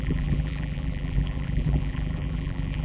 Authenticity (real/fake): fake